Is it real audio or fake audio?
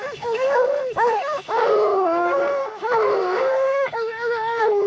fake